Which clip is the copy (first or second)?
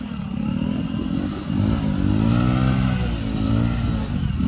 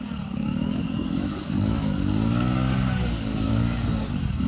second